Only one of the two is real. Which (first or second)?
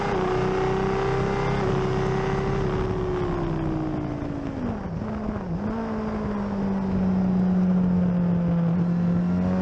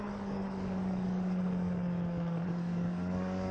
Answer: first